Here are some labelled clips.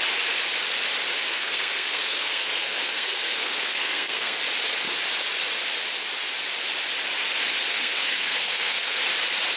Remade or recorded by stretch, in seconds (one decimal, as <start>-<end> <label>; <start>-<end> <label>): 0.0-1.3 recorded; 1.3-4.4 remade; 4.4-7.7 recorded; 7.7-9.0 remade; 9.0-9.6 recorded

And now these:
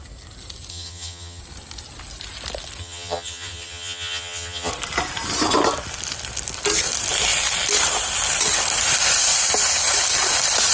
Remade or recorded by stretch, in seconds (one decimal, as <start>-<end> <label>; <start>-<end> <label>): 0.0-0.7 recorded; 0.7-1.4 remade; 1.4-2.8 recorded; 2.8-4.7 remade; 4.7-10.7 recorded

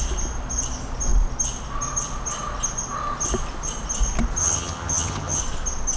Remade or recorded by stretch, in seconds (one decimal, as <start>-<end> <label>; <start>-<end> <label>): 0.0-4.4 recorded; 4.4-5.4 remade; 5.4-6.0 recorded

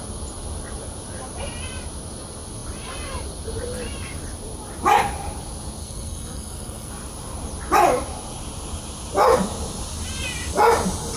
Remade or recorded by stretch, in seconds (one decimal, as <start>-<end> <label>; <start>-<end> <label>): 0.0-5.8 recorded; 5.8-6.9 remade; 6.9-11.2 recorded